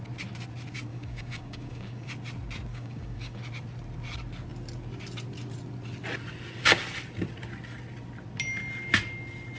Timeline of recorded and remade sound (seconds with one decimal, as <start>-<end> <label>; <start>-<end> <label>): 0.0-0.9 recorded; 0.9-2.1 remade; 2.1-2.7 recorded; 2.7-3.4 remade; 3.4-9.6 recorded